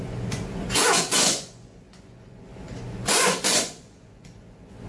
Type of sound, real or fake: fake